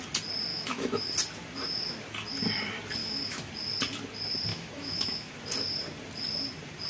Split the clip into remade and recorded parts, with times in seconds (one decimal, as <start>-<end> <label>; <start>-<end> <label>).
0.0-0.5 recorded; 0.5-1.1 remade; 1.1-3.0 recorded; 3.0-3.5 remade; 3.5-4.5 recorded; 4.5-5.3 remade; 5.3-6.9 recorded